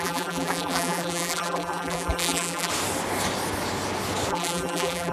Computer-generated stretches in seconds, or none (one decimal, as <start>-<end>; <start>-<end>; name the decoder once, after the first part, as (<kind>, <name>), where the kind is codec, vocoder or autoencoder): 0.0-2.7 (vocoder, BigVGAN v2); 4.3-5.1